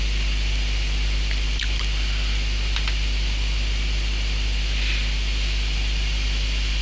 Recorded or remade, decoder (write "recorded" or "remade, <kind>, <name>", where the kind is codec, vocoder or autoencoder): recorded